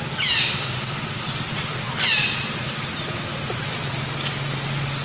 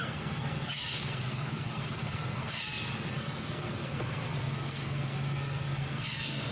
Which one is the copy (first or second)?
second